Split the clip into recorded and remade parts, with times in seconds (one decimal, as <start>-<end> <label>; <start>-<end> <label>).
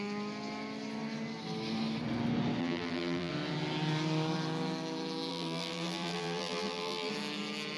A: 0.0-2.6 recorded; 2.6-3.3 remade; 3.3-5.3 recorded; 5.3-7.1 remade; 7.1-7.8 recorded